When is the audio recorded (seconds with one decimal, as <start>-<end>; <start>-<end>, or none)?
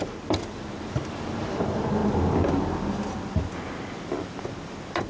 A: 0.0-5.1